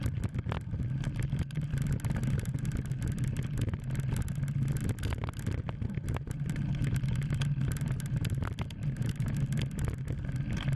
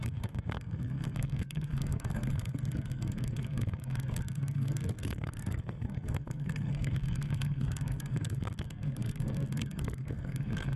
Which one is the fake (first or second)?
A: second